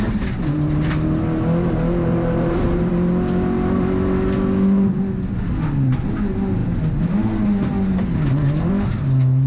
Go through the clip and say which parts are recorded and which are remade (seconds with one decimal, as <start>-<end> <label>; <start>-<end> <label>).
0.0-2.1 recorded; 2.1-2.9 remade; 2.9-9.5 recorded